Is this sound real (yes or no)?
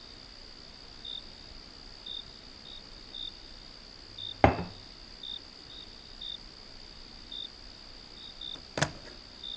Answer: yes